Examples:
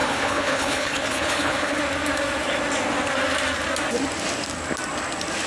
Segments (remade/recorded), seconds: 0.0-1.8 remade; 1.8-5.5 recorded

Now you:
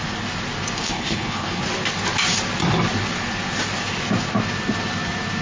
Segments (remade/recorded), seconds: 0.0-0.8 recorded; 0.8-1.6 remade; 1.6-5.4 recorded

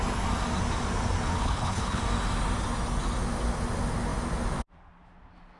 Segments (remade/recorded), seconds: 0.0-1.3 recorded; 1.3-2.0 remade; 2.0-5.6 recorded

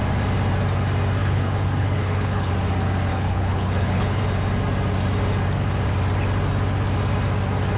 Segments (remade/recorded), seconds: 0.0-1.2 recorded; 1.2-2.5 remade; 2.5-3.1 recorded; 3.1-4.2 remade; 4.2-7.8 recorded

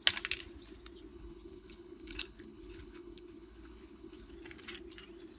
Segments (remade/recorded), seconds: 0.0-1.1 recorded; 1.1-4.3 remade; 4.3-5.4 recorded

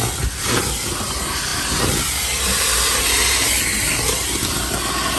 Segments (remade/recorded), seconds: 0.0-5.2 recorded

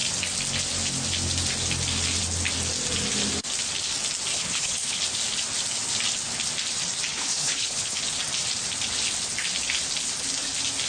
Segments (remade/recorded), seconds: 0.0-4.3 recorded; 4.3-5.0 remade; 5.0-7.1 recorded; 7.1-8.0 remade; 8.0-10.9 recorded

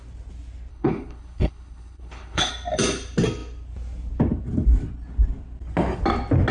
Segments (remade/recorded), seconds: 0.0-0.7 recorded; 0.7-2.5 remade; 2.5-6.5 recorded